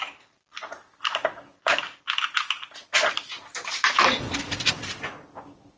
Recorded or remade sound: recorded